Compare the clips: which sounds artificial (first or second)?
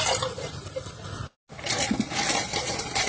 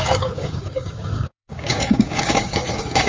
second